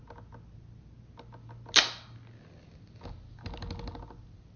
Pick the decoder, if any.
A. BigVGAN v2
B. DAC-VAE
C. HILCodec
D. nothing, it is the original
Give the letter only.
D